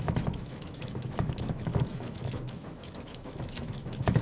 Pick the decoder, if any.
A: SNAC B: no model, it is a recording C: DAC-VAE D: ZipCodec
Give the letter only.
C